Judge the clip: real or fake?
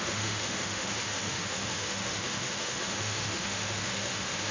fake